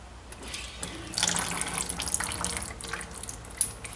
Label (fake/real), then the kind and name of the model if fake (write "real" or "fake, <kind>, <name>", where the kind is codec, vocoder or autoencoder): real